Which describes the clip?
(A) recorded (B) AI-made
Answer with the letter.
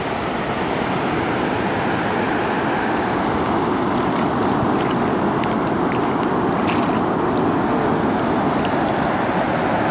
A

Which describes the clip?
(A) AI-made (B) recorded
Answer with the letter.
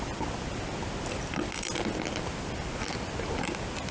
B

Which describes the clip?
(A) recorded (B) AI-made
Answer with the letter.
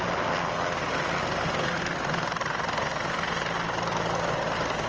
A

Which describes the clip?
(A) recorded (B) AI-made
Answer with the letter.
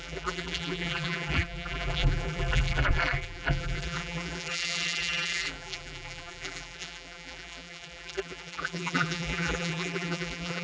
B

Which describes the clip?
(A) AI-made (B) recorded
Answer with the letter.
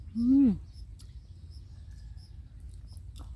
B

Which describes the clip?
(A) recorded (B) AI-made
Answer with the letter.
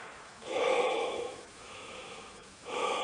B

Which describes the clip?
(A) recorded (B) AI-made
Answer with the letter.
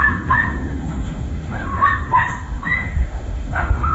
B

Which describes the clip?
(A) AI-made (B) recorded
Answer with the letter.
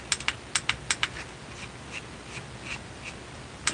B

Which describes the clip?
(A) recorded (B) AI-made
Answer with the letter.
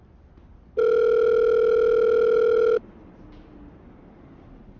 A